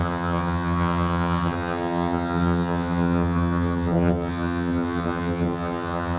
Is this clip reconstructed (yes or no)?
yes